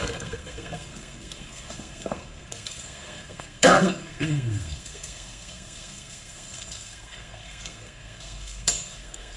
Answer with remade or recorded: remade